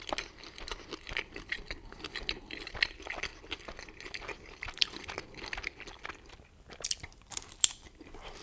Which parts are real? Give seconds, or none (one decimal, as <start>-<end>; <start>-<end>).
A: 0.0-8.4

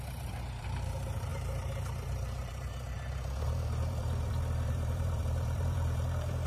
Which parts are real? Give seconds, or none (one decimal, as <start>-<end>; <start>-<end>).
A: none

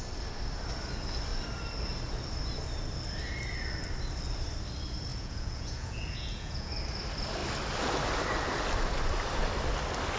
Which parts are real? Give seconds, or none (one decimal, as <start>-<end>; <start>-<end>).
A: 0.0-5.1; 6.7-10.2

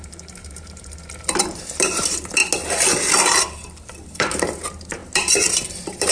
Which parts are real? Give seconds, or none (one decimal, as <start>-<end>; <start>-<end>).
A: 0.9-1.4; 2.4-4.1

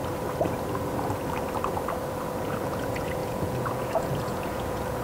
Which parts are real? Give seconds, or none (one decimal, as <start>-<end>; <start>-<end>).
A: 0.0-2.4